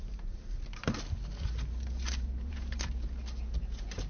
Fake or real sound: fake